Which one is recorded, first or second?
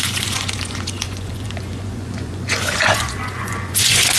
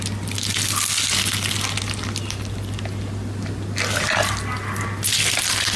second